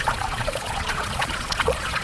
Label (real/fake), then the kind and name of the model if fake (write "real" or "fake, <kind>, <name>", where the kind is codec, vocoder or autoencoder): fake, vocoder, Vocos